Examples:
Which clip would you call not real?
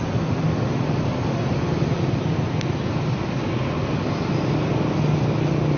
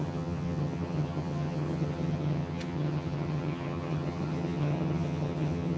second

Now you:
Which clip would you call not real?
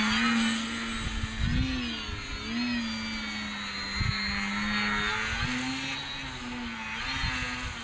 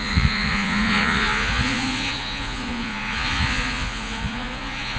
second